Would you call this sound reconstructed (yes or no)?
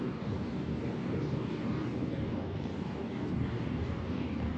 yes